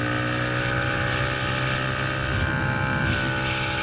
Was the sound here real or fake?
real